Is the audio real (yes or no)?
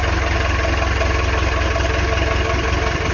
yes